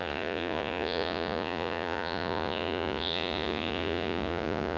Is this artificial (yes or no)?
yes